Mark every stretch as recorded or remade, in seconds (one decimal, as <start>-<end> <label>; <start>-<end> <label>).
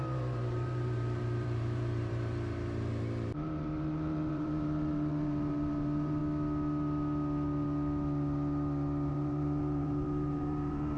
0.0-6.2 remade; 6.2-9.1 recorded; 9.1-11.0 remade